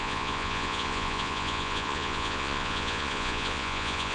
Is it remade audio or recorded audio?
remade